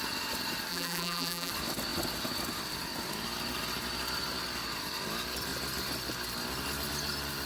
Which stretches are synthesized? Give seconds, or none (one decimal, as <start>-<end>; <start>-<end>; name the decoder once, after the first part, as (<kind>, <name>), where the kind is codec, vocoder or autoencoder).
0.7-1.5 (vocoder, BigVGAN v2)